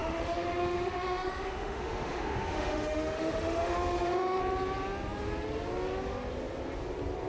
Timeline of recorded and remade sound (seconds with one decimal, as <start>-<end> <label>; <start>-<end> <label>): 0.0-4.4 remade; 4.4-7.3 recorded